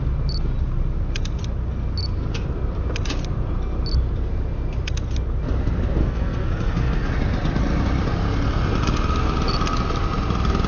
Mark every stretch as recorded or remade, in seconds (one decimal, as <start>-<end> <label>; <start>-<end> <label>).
0.0-6.0 recorded; 6.0-7.1 remade; 7.1-10.7 recorded